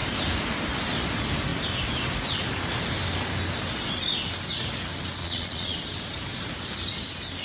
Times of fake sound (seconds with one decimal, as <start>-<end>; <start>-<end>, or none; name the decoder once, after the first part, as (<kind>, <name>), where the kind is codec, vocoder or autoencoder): 5.2-5.8 (vocoder, Vocos)

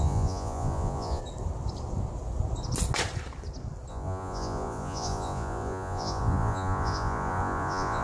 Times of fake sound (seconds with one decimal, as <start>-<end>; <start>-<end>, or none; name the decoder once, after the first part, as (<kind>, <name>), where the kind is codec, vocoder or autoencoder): 0.0-1.2 (vocoder, Vocos); 3.9-8.0